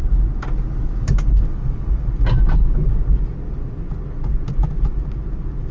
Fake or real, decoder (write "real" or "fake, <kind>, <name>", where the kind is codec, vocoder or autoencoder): real